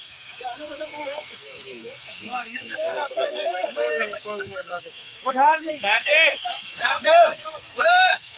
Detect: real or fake fake